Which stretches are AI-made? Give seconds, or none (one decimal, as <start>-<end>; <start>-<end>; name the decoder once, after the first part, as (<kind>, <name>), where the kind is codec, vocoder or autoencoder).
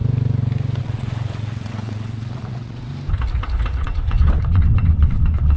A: 0.8-2.9 (vocoder, WaveNeXt); 3.8-5.6